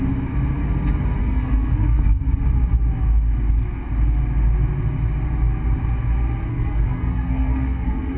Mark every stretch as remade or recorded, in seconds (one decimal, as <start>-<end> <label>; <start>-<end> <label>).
0.0-1.2 recorded; 1.2-2.2 remade; 2.2-6.5 recorded; 6.5-8.2 remade